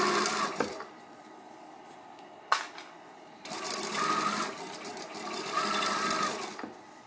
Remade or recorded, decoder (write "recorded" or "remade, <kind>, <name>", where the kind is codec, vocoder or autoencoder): recorded